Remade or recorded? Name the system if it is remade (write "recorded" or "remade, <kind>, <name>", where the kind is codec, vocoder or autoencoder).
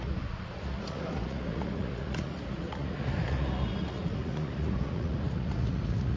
remade, vocoder, Vocos